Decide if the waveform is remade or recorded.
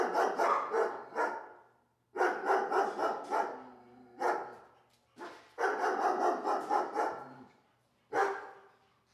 remade